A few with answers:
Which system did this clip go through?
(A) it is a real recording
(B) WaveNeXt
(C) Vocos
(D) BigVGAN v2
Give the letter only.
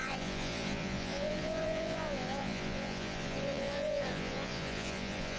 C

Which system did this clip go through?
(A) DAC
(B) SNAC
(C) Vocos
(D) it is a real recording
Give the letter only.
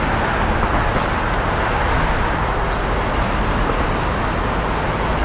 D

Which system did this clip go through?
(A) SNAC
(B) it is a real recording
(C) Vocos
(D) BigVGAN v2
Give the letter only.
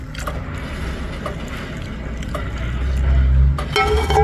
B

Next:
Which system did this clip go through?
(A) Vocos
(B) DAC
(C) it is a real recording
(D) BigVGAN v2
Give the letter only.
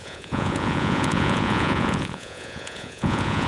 A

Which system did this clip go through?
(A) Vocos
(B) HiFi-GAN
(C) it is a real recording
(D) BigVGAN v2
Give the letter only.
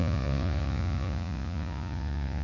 A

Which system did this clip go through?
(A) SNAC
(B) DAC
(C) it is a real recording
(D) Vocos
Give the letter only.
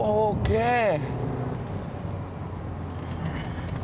C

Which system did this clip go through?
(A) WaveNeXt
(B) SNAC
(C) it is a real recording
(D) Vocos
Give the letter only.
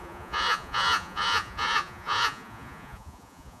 D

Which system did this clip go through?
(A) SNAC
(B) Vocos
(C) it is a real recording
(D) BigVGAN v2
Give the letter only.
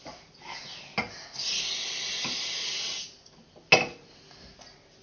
C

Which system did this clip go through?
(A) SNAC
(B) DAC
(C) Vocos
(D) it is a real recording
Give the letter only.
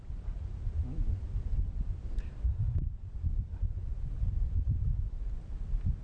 D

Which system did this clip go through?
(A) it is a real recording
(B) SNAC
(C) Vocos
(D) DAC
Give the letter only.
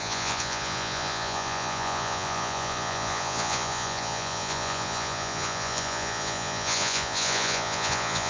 C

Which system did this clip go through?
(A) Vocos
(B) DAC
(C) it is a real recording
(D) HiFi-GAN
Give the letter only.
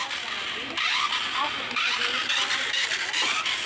C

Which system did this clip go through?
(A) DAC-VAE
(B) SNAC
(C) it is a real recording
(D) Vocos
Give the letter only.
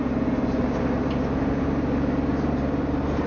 C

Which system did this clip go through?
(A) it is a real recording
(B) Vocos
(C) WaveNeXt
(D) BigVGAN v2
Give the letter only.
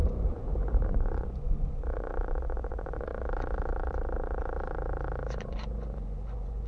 B